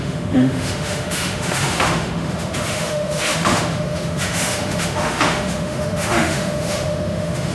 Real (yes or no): no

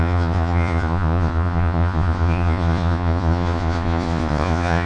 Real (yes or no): no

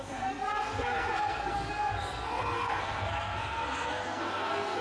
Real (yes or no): no